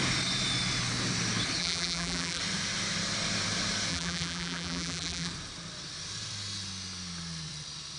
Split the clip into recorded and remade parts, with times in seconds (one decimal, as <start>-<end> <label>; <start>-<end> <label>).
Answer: 0.0-1.6 recorded; 1.6-2.4 remade; 2.4-3.9 recorded; 3.9-5.3 remade; 5.3-8.0 recorded